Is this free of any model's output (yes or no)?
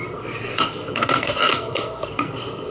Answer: no